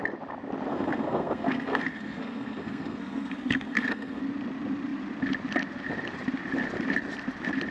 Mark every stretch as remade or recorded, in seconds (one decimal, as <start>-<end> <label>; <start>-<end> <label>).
0.0-0.7 recorded; 0.7-4.2 remade; 4.2-7.7 recorded